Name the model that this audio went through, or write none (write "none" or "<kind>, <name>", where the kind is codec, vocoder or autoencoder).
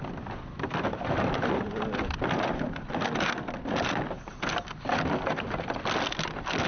none